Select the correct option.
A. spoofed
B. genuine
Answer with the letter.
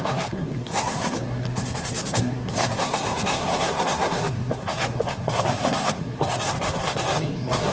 A